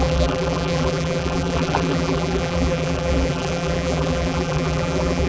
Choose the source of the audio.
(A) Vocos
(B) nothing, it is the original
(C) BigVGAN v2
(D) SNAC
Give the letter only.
C